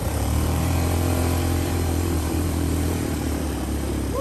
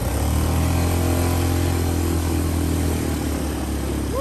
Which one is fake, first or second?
first